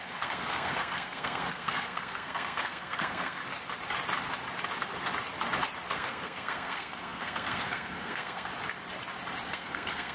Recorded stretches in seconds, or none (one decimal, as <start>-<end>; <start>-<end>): 3.4-5.9; 8.5-9.5